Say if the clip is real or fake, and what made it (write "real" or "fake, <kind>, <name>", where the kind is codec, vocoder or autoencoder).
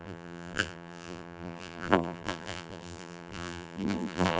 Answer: fake, vocoder, BigVGAN v2